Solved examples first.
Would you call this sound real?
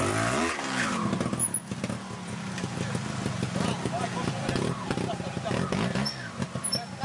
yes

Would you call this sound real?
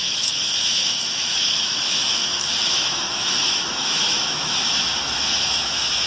no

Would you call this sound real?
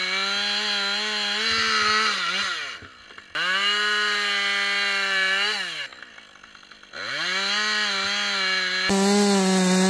yes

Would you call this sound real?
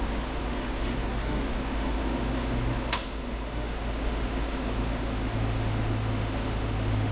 no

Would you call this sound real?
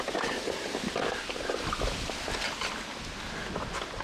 yes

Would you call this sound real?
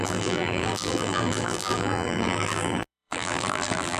no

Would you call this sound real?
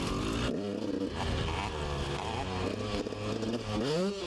yes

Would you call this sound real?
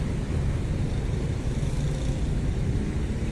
yes